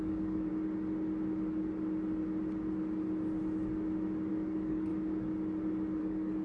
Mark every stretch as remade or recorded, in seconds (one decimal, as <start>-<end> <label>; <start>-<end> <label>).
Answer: 0.0-0.5 remade; 0.5-4.3 recorded; 4.3-4.9 remade; 4.9-6.0 recorded; 6.0-6.4 remade